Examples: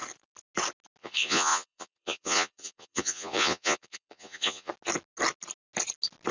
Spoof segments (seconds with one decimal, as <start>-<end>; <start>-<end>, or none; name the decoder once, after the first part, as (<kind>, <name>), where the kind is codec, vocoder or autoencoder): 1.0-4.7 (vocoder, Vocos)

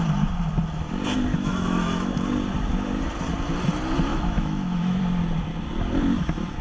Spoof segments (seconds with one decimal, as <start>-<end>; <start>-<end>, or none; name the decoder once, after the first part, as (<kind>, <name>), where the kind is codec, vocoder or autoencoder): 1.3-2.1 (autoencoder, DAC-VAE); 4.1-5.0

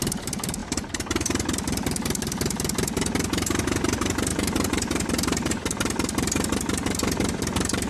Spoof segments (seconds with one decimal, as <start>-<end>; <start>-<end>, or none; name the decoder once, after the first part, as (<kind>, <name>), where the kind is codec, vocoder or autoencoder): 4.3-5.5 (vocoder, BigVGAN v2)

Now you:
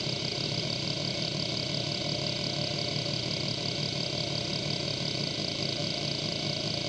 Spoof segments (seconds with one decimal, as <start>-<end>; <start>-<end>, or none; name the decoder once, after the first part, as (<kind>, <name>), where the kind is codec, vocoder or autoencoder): 0.0-5.8 (vocoder, BigVGAN v2)

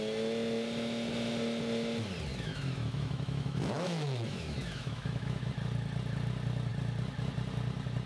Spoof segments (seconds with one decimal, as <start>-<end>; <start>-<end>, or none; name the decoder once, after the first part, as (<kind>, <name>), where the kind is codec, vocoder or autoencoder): 2.3-5.5 (autoencoder, DAC-VAE)

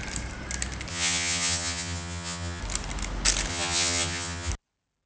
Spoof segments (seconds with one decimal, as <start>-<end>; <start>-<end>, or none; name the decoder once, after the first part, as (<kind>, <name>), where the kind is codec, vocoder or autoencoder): 0.9-2.6 (vocoder, HiFi-GAN); 3.5-4.5